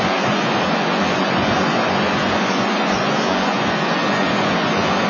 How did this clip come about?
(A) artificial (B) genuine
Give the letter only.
A